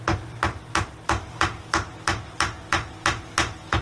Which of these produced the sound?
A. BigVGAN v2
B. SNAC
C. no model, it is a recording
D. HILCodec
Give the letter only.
C